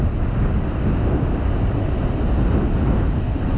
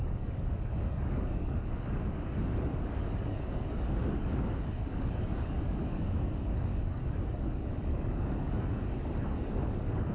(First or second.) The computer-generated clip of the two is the second